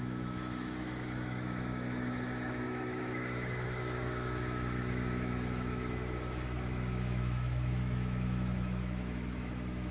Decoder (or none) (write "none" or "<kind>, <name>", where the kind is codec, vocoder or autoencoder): autoencoder, DAC-VAE